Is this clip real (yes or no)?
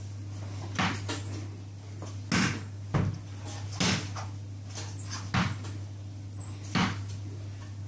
yes